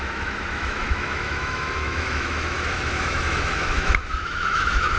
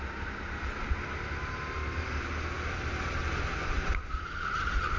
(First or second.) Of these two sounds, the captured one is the second